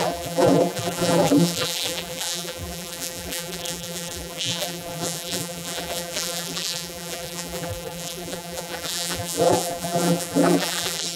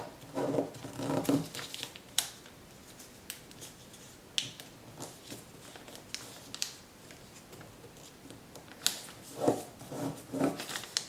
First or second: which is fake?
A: first